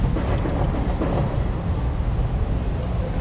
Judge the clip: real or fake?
real